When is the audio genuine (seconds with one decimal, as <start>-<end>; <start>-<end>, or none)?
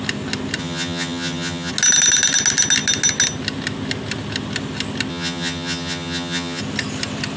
0.0-0.6; 1.7-5.1; 6.6-7.4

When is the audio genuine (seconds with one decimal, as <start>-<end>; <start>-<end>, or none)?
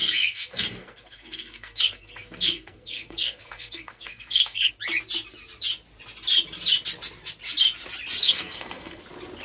4.7-8.2; 9.0-9.4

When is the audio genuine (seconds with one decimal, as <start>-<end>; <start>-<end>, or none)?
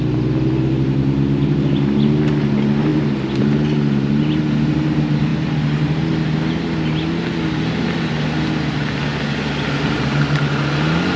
0.0-11.2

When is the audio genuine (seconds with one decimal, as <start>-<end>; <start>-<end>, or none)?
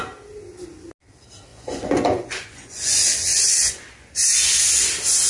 0.0-1.5; 4.7-5.3